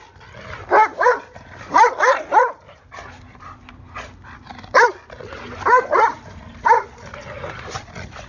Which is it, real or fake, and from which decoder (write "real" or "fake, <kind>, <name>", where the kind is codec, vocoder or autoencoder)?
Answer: real